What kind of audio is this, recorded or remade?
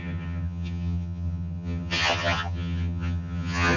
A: remade